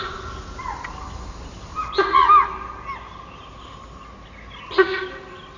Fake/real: real